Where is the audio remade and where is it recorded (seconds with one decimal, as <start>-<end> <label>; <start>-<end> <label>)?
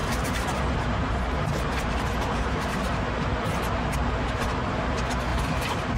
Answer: 0.0-3.0 remade; 3.0-5.3 recorded; 5.3-6.0 remade